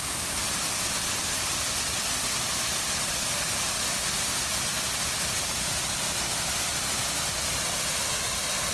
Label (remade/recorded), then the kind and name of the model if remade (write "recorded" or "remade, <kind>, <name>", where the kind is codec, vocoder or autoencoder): recorded